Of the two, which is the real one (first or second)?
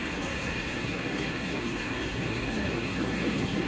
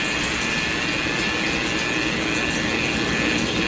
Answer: second